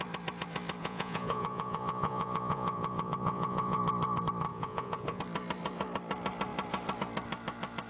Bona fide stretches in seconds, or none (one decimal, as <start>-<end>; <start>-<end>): 0.0-0.8; 3.8-4.5; 5.2-7.9